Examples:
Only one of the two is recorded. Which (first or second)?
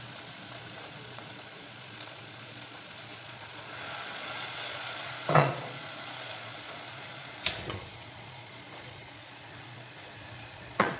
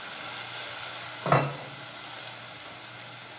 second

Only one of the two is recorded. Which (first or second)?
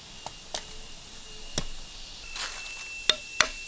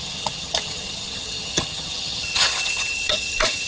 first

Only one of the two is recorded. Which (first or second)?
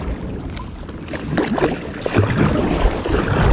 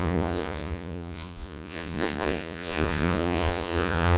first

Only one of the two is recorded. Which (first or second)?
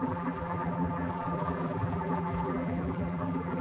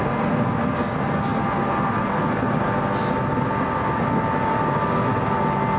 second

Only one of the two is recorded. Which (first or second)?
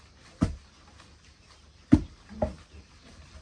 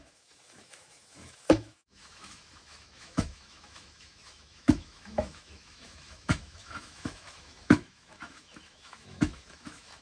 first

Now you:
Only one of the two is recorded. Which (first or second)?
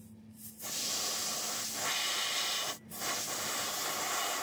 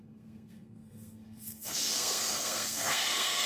first